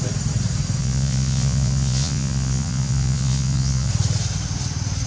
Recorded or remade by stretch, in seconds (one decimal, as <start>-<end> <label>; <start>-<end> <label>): 0.0-0.8 recorded; 0.8-3.9 remade; 3.9-5.1 recorded